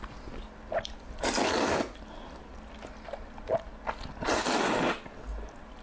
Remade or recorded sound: recorded